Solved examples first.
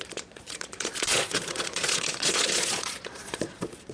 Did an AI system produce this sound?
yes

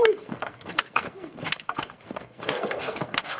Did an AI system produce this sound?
yes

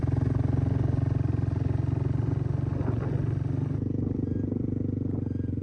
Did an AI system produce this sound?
no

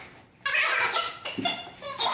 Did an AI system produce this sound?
no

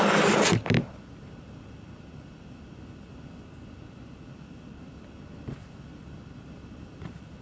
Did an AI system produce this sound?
no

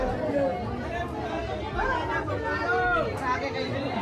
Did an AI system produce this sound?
no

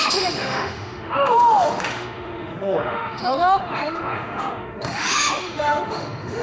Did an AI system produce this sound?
yes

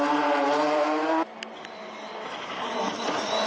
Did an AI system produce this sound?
no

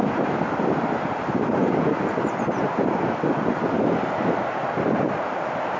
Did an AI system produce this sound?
no